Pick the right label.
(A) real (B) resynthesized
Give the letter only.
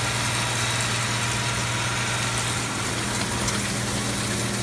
A